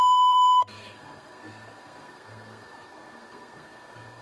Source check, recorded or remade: remade